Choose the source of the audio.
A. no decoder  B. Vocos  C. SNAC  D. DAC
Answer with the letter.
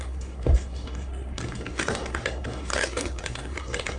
C